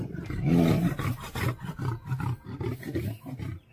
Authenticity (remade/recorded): recorded